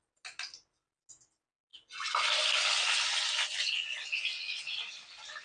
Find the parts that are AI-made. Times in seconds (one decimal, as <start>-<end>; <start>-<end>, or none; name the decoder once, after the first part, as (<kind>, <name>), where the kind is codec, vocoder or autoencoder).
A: none